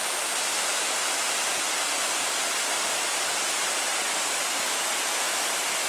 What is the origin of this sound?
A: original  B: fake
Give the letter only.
A